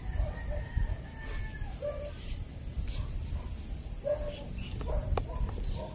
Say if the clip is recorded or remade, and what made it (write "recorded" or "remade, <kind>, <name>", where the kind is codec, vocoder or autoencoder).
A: recorded